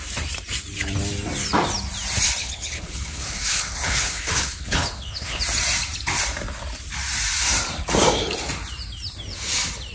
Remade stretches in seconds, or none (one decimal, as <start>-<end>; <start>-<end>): 2.4-5.4